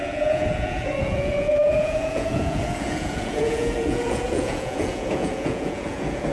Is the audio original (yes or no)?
no